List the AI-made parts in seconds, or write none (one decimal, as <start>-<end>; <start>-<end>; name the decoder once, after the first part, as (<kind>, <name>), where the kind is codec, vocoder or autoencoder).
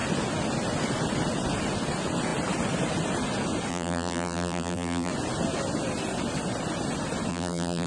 3.7-5.1 (vocoder, BigVGAN v2); 7.3-7.9